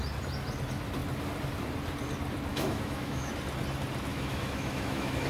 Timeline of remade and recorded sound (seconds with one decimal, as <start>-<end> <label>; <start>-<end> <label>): 0.0-2.5 recorded; 2.5-3.3 remade; 3.3-4.1 recorded; 4.1-5.3 remade